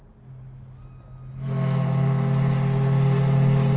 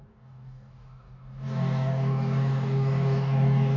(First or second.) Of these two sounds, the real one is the first